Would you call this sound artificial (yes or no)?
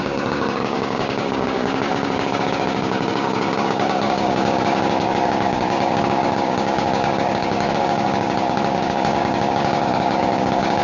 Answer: yes